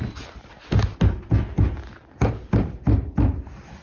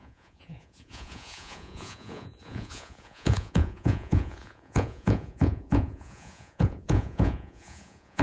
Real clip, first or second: first